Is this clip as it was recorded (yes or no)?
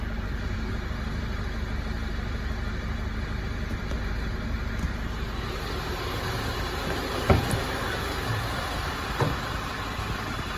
no